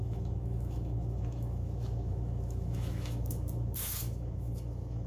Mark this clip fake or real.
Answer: fake